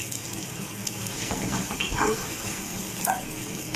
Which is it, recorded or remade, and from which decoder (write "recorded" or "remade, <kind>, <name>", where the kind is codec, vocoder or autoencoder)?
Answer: remade, codec, SNAC